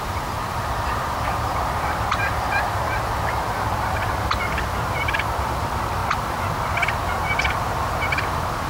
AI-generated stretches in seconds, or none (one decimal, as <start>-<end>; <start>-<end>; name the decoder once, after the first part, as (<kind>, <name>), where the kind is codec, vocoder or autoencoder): 0.0-6.0 (vocoder, BigVGAN v2); 7.6-8.7